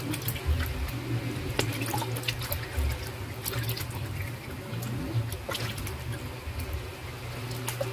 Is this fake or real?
real